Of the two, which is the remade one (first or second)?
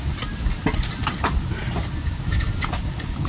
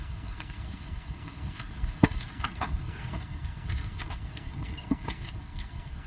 second